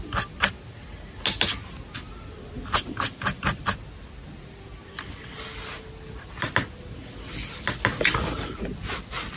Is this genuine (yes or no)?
yes